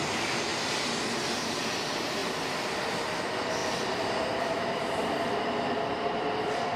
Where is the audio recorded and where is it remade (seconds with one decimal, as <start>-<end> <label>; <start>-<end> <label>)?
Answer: 0.0-2.2 remade; 2.2-3.2 recorded; 3.2-6.8 remade